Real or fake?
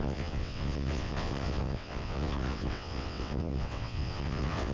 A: fake